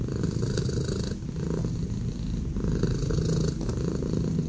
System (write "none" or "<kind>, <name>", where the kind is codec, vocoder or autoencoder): none